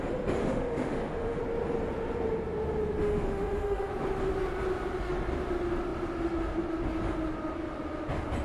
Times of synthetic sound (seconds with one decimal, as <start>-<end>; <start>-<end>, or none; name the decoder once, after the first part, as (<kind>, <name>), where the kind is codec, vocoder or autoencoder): 0.4-1.4 (autoencoder, DAC-VAE); 3.0-3.9